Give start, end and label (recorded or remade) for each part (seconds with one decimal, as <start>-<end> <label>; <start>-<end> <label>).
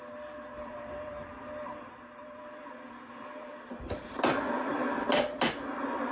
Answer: 0.0-0.5 recorded; 0.5-4.2 remade; 4.2-4.7 recorded; 4.7-5.4 remade; 5.4-6.1 recorded